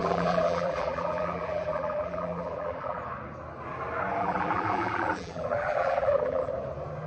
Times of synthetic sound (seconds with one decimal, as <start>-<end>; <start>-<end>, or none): 0.0-3.0; 4.2-6.5